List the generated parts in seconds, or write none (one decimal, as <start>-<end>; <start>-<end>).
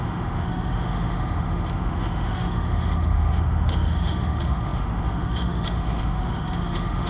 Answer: 0.0-7.1